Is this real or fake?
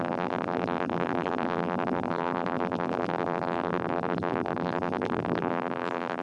fake